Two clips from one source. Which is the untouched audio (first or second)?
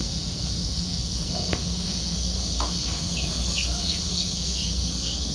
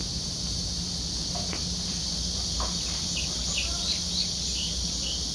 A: second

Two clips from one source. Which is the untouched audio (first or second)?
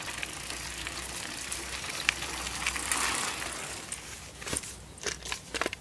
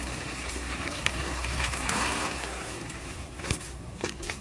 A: first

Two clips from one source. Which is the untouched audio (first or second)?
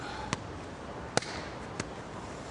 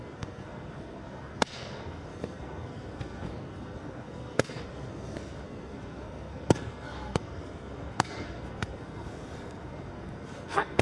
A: first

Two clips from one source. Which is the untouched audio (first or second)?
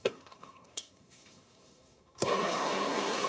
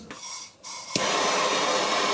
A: second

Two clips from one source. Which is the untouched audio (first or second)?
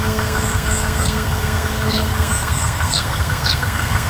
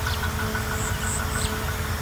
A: second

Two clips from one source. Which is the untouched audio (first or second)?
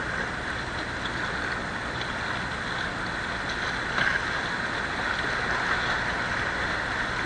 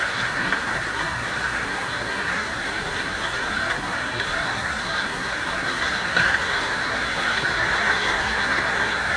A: first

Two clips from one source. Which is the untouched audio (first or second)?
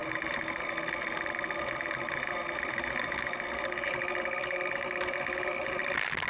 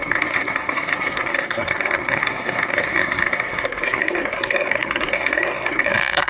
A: first